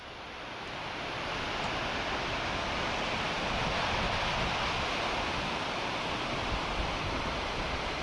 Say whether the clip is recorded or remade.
recorded